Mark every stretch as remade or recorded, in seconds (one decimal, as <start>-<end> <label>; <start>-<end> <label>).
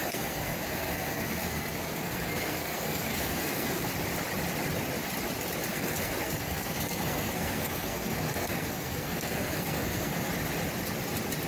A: 0.0-3.9 remade; 3.9-5.7 recorded; 5.7-10.3 remade; 10.3-11.5 recorded